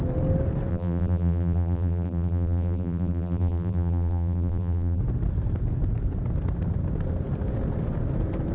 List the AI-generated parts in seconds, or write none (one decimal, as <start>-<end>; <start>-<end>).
0.7-5.0